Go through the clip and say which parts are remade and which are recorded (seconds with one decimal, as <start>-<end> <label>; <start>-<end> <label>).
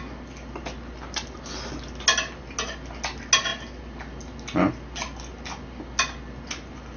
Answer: 0.0-7.0 recorded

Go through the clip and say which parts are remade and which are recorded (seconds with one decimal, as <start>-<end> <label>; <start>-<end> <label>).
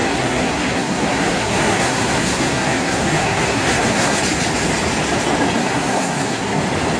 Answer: 0.0-4.2 remade; 4.2-5.6 recorded; 5.6-6.6 remade; 6.6-7.0 recorded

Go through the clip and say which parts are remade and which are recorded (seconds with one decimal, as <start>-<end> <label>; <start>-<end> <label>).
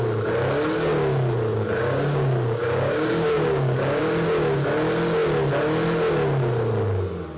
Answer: 0.0-1.5 recorded; 1.5-4.0 remade; 4.0-7.4 recorded